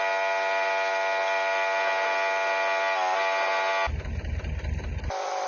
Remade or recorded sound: recorded